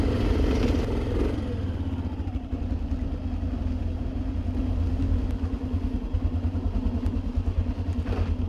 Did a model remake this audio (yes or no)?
no